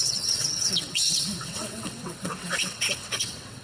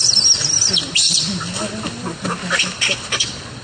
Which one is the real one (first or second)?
second